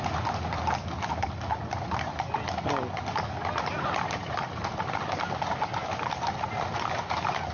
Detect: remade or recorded recorded